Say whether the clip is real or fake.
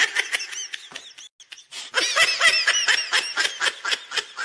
real